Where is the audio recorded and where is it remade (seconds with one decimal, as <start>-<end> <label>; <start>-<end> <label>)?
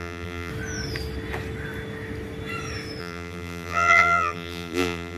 0.0-0.5 remade; 0.5-3.0 recorded; 3.0-5.2 remade